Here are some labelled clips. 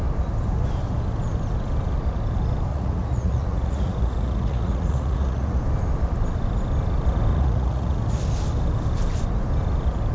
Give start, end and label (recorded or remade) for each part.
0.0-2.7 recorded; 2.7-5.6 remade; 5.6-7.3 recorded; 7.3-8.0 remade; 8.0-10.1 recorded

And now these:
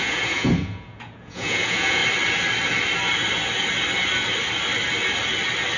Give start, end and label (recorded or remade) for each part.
0.0-2.0 remade; 2.0-5.8 recorded

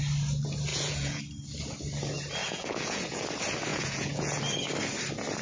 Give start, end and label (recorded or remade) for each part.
0.0-0.7 recorded; 0.7-1.2 remade; 1.2-2.4 recorded; 2.4-3.2 remade; 3.2-3.7 recorded; 3.7-4.4 remade; 4.4-5.4 recorded